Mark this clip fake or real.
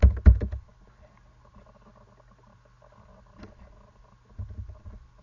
real